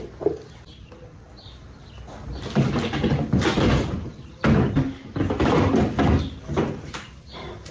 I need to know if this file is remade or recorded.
recorded